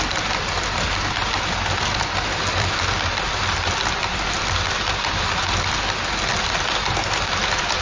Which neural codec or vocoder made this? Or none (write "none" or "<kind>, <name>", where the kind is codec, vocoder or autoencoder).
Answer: none